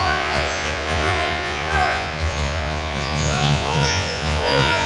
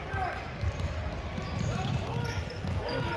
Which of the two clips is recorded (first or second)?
second